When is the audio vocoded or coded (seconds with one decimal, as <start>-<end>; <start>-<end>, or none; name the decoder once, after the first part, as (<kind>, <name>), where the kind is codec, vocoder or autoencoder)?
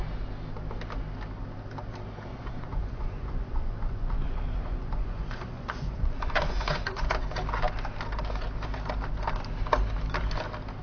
2.3-7.1 (vocoder, Vocos)